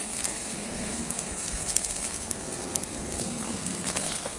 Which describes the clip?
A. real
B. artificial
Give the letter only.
B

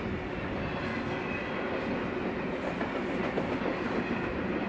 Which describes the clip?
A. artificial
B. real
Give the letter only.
B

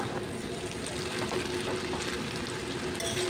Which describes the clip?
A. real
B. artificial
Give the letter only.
A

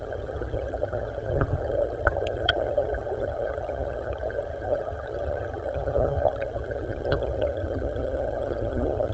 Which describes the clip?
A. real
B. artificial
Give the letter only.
B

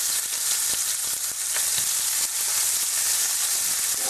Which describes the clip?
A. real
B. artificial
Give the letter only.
A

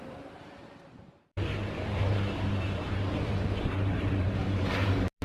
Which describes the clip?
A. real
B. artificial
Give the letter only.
B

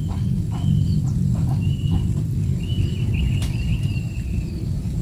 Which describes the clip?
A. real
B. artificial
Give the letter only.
A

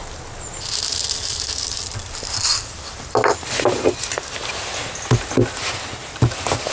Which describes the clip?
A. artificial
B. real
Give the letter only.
B